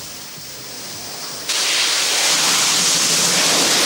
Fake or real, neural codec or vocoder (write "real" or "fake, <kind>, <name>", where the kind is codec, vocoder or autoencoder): real